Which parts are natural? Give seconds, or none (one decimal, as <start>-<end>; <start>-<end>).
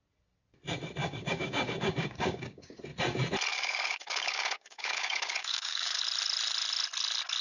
0.0-1.0; 2.8-3.5; 6.0-7.4